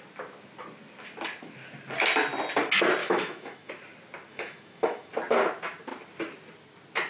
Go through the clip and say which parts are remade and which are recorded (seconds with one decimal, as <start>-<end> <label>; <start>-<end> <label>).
0.0-3.0 recorded; 3.0-3.7 remade; 3.7-4.3 recorded; 4.3-5.1 remade; 5.1-7.1 recorded